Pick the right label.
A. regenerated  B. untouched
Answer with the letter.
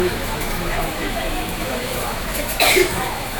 A